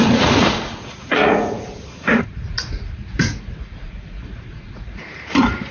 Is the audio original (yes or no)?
no